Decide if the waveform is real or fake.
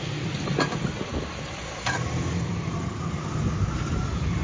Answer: fake